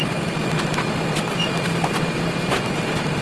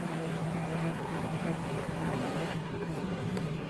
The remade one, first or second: second